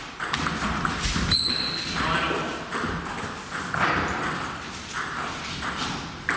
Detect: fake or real real